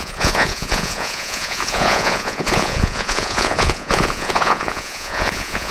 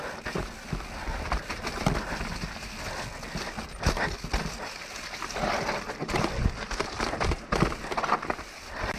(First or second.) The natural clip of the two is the second